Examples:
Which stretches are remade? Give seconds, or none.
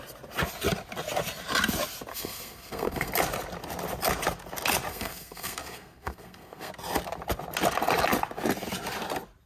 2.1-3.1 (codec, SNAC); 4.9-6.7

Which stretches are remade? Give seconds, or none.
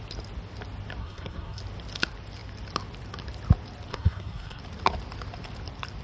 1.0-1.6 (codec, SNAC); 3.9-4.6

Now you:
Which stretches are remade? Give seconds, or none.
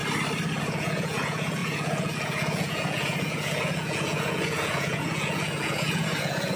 0.6-6.6 (vocoder, Vocos)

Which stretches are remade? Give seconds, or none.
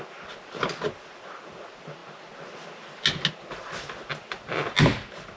none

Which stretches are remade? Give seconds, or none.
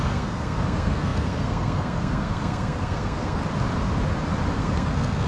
0.0-3.4 (codec, SNAC); 4.6-5.3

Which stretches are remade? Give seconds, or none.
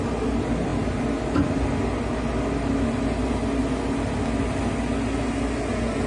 none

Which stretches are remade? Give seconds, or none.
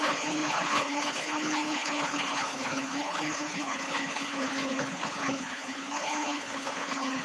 0.0-7.2 (codec, HILCodec)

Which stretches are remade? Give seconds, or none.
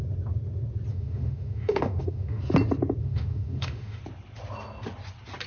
0.9-2.4 (autoencoder, DAC-VAE); 3.0-4.0